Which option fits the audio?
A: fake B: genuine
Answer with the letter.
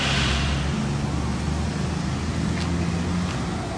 B